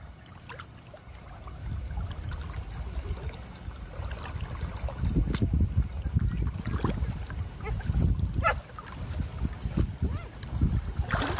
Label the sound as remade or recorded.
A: recorded